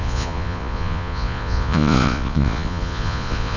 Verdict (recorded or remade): remade